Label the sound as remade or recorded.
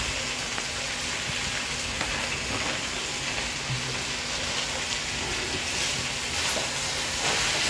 recorded